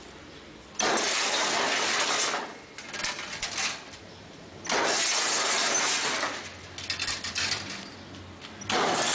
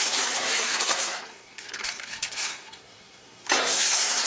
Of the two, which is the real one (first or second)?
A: first